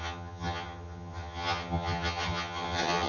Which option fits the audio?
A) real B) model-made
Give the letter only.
B